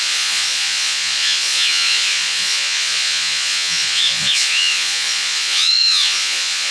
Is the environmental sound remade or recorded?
remade